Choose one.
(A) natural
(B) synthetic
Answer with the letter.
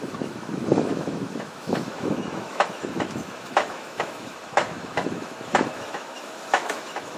B